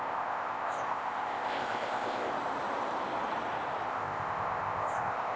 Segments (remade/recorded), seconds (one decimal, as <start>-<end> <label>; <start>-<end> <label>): 0.0-2.3 remade; 2.3-3.9 recorded; 3.9-5.4 remade